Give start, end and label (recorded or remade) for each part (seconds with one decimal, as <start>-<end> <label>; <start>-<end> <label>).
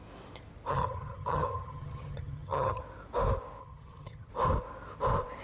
0.0-0.7 recorded; 0.7-2.8 remade; 2.8-3.6 recorded; 3.6-4.3 remade; 4.3-5.4 recorded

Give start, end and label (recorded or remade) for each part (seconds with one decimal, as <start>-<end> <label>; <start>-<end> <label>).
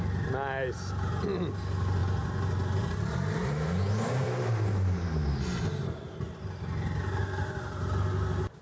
0.0-8.6 recorded